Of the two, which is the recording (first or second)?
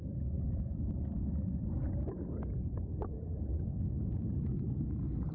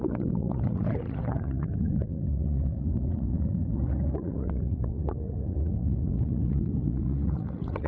first